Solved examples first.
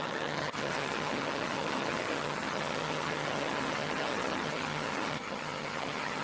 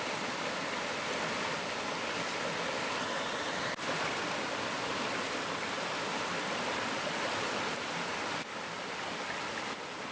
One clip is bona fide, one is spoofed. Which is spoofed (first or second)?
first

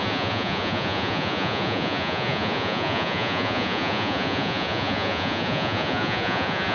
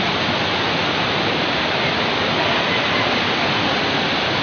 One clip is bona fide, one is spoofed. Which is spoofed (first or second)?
first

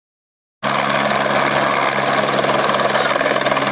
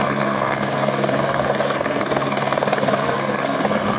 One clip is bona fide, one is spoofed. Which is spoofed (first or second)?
second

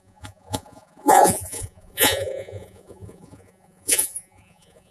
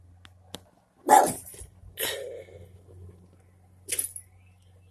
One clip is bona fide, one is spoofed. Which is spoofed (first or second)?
first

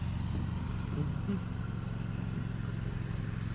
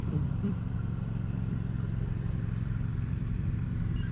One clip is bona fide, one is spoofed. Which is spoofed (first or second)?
second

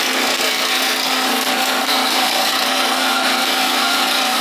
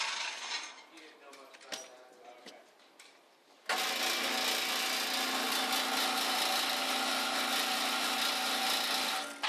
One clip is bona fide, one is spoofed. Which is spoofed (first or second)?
first